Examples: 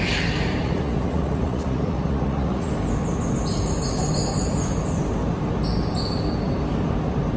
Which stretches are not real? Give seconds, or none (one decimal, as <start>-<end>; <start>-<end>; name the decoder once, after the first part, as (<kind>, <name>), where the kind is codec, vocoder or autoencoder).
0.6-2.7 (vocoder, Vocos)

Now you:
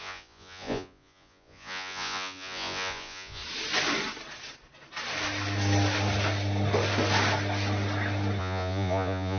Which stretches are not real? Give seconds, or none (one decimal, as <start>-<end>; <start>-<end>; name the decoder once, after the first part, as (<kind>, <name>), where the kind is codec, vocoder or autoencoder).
0.0-3.4 (vocoder, Vocos); 8.4-9.4

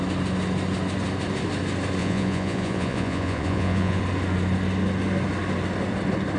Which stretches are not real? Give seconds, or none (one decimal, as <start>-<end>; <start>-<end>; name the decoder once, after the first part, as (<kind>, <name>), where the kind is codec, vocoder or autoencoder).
2.0-4.0 (vocoder, Vocos)